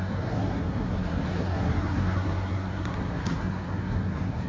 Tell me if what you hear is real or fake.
fake